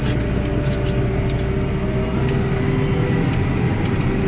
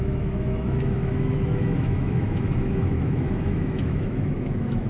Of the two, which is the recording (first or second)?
first